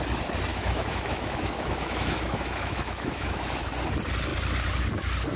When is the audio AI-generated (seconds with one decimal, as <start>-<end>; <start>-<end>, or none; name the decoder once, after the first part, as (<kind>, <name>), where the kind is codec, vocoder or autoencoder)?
0.5-3.7 (autoencoder, DAC-VAE)